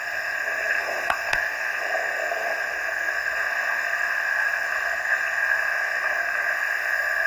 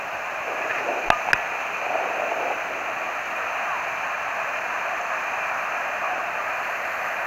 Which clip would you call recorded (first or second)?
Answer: second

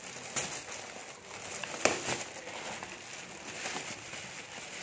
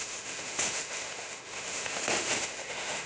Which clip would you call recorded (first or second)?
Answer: first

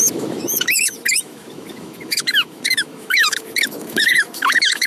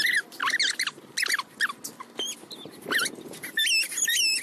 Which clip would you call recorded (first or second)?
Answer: second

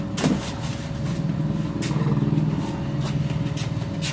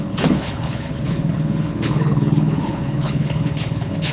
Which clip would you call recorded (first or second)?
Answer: first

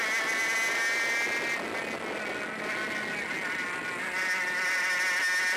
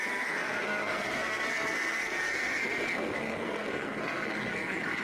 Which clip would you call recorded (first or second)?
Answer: first